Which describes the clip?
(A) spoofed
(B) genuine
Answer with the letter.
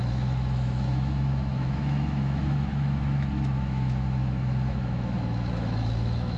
A